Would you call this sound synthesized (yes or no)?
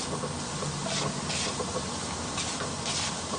no